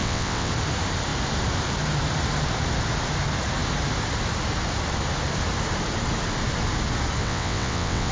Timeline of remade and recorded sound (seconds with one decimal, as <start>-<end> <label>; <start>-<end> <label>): 0.0-0.5 remade; 0.5-7.2 recorded; 7.2-8.1 remade